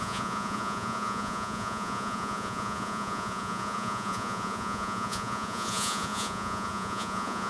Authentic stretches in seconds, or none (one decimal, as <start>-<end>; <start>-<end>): none